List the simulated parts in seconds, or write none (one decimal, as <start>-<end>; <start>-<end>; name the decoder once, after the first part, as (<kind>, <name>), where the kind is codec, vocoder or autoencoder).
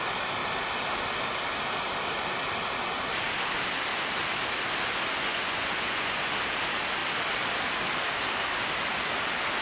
5.2-6.3 (vocoder, Vocos)